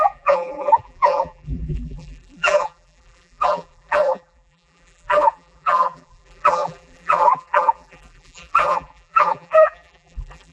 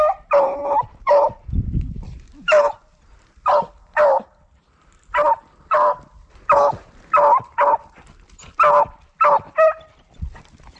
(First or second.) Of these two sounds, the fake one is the first